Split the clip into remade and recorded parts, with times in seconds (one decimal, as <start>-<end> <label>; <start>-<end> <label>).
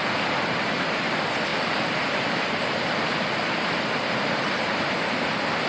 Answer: 0.0-5.7 remade